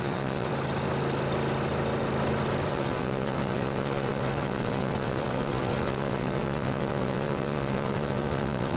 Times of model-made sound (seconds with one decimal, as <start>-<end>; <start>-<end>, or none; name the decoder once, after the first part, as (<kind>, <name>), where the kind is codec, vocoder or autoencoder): 0.0-0.5 (vocoder, WaveNeXt); 2.7-8.8